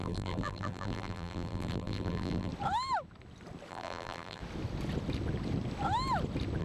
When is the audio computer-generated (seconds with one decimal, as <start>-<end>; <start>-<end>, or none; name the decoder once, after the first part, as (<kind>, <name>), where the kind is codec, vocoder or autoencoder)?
0.0-2.5 (vocoder, BigVGAN v2); 3.7-4.4

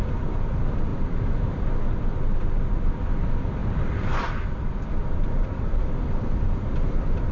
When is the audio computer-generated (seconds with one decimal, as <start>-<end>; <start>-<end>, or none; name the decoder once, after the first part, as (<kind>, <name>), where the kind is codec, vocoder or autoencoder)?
none

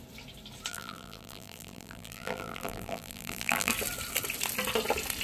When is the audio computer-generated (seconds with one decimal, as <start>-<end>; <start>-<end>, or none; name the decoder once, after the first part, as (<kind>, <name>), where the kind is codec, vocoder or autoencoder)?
0.7-3.7 (vocoder, BigVGAN v2)

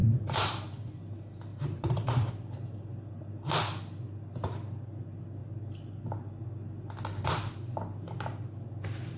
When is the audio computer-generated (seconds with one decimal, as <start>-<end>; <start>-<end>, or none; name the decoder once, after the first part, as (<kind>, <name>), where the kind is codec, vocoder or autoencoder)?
0.0-0.6 (vocoder, BigVGAN v2); 1.5-2.3

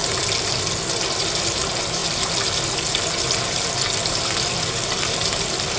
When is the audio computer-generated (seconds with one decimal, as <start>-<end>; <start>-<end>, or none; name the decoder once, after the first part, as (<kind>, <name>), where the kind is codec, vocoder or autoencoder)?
0.6-5.8 (vocoder, BigVGAN v2)

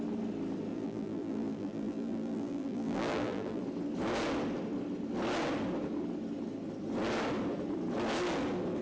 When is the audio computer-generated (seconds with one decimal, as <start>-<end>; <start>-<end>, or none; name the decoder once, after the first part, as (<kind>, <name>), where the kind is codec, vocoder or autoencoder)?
0.7-3.6 (vocoder, BigVGAN v2)

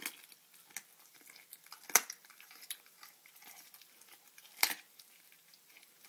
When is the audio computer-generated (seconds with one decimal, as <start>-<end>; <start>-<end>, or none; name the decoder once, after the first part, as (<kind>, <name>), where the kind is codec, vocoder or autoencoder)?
2.2-6.1 (vocoder, BigVGAN v2)

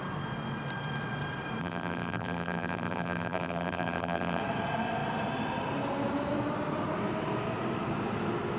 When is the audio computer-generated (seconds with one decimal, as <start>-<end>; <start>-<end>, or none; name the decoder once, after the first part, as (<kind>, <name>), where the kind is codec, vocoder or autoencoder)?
1.6-4.4 (vocoder, BigVGAN v2)